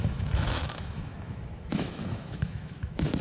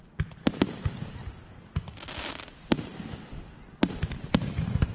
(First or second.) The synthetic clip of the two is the first